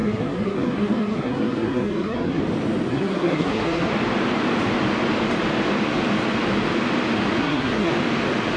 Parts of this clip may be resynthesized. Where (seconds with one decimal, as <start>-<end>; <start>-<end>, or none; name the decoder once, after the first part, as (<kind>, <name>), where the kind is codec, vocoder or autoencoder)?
0.0-2.4 (codec, SNAC); 2.9-3.9; 7.4-7.9